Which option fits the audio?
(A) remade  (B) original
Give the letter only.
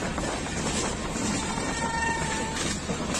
B